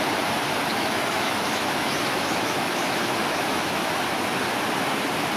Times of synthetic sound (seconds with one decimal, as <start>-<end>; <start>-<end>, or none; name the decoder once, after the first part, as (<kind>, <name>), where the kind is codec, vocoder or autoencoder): 0.7-3.9 (autoencoder, DAC-VAE)